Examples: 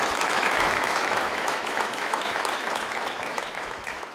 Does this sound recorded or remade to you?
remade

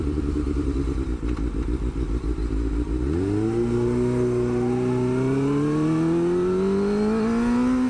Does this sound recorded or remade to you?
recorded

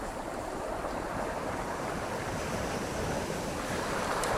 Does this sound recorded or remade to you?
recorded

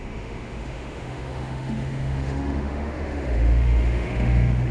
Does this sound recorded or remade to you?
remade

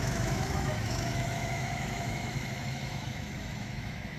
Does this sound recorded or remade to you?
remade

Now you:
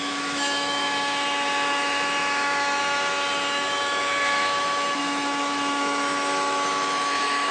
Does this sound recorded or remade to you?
remade